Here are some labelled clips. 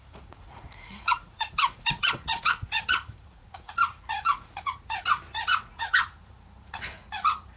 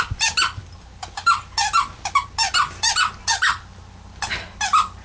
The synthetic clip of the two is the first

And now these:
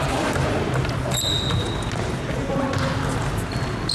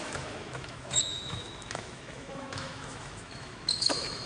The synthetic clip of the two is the second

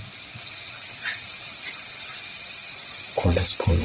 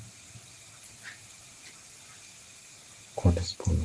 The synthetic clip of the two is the first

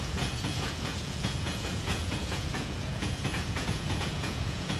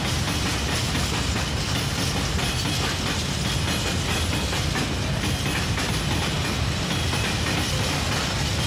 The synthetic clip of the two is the first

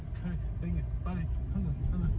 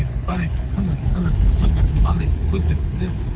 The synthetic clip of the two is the second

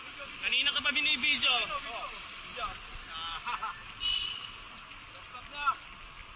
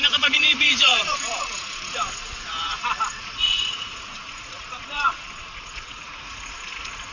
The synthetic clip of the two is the second